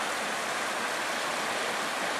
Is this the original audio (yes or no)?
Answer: yes